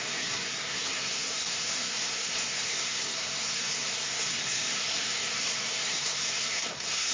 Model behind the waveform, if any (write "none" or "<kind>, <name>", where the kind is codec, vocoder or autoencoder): codec, SNAC